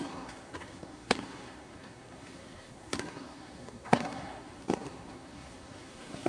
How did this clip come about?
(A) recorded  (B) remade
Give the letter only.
B